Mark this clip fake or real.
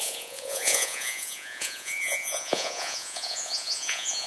fake